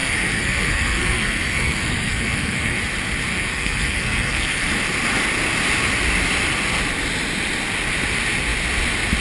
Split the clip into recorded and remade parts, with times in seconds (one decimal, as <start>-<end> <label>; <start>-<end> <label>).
0.0-2.8 remade; 2.8-3.3 recorded; 3.3-4.7 remade; 4.7-9.2 recorded